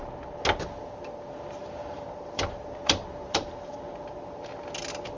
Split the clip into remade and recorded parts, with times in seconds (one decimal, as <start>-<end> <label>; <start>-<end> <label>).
0.0-1.6 recorded; 1.6-3.7 remade; 3.7-5.2 recorded